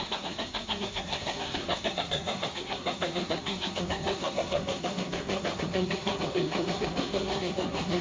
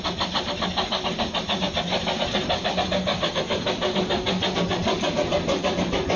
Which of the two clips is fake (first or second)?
first